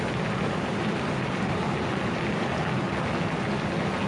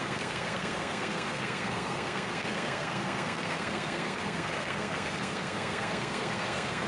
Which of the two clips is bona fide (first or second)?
first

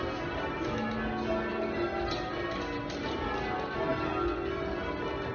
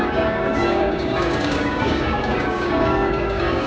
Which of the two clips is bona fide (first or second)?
first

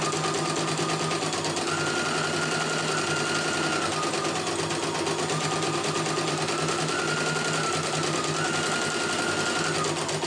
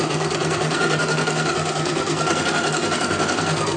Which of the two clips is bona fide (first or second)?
first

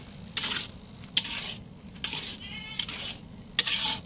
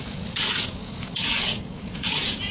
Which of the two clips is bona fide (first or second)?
first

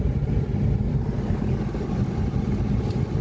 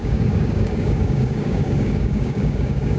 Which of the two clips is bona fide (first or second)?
first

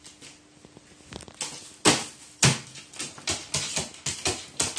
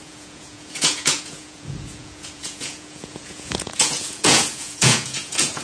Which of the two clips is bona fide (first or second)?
first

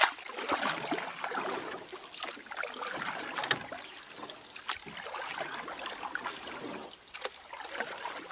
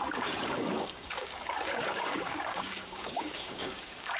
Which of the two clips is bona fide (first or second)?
first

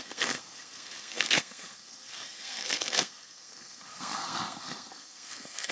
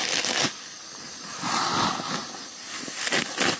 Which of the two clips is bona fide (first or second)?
second